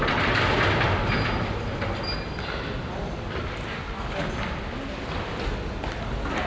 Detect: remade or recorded recorded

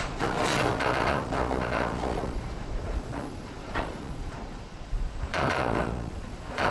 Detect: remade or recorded remade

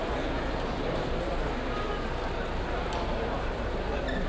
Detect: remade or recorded recorded